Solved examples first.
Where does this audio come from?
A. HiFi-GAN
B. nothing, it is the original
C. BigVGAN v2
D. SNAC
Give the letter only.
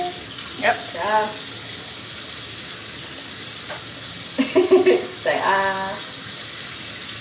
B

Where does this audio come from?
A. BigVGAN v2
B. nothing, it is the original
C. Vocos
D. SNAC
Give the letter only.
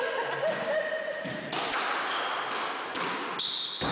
B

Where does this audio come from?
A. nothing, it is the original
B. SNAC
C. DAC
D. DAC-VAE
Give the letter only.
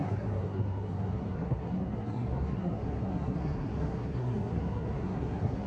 B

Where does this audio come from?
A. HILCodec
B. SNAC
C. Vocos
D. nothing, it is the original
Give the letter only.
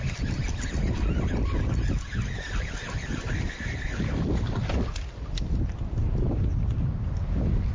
D